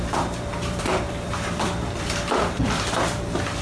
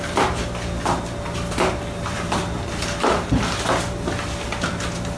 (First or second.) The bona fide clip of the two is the second